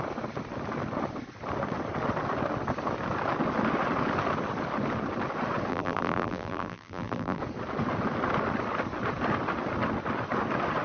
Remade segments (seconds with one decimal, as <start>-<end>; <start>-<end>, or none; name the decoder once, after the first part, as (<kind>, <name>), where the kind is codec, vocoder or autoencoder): 5.7-7.4 (vocoder, BigVGAN v2)